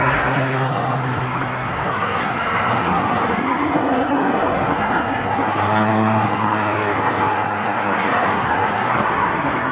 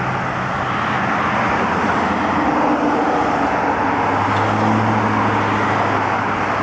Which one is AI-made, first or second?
first